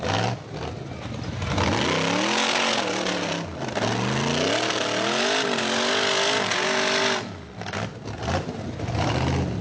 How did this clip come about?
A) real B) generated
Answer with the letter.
A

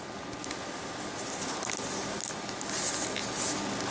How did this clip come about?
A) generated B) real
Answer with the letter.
B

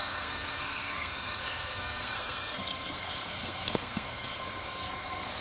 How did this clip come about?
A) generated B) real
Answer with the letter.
A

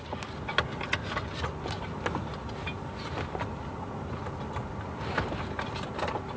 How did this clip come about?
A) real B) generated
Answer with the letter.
A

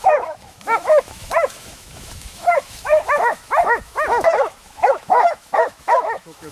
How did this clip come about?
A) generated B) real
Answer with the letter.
A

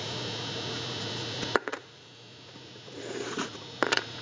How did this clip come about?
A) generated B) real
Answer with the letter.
A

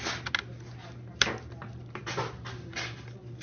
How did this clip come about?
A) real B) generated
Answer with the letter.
A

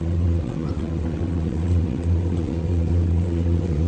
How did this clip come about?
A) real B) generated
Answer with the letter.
B